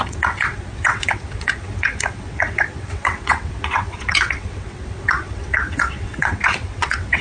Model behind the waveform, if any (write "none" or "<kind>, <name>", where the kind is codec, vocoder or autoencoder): vocoder, WaveNeXt